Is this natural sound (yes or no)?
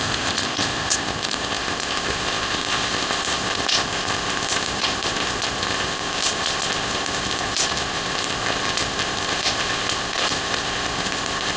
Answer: no